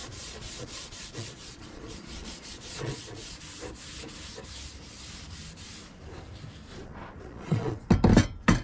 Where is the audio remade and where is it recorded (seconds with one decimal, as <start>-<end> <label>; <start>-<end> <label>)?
0.0-3.4 remade; 3.4-6.7 recorded; 6.7-7.9 remade; 7.9-8.6 recorded